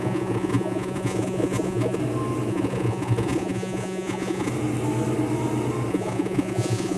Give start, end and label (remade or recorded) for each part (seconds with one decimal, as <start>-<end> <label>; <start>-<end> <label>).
0.0-2.0 remade; 2.0-2.5 recorded; 2.5-4.5 remade; 4.5-5.9 recorded; 5.9-7.0 remade